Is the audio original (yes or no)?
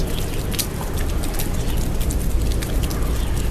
yes